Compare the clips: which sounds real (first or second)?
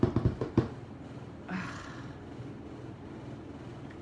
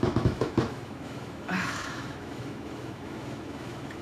first